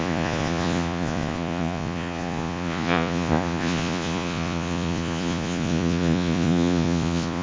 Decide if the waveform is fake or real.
fake